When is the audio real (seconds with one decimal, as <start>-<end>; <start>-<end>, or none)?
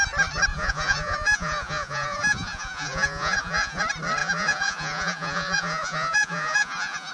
0.0-0.5; 3.8-4.2